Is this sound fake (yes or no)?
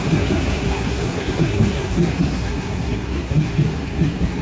yes